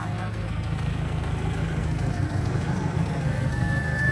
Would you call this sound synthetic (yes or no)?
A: yes